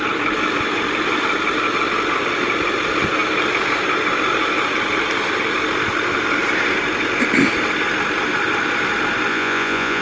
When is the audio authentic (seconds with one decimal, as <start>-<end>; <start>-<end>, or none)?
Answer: 0.0-9.3